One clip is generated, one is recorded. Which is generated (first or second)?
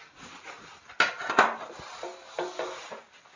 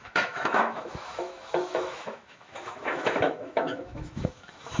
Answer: second